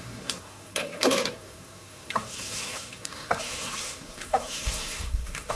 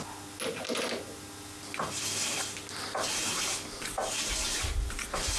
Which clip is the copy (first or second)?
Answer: first